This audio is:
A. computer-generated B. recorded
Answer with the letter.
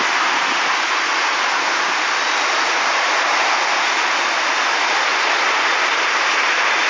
B